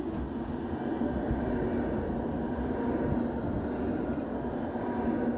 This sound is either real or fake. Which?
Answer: real